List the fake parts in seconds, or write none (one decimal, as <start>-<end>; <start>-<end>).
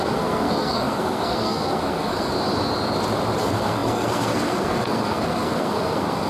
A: 0.0-2.3; 3.4-6.3